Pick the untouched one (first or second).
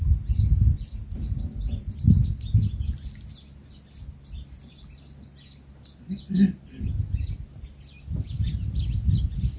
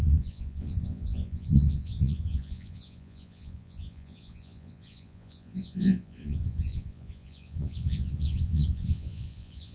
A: first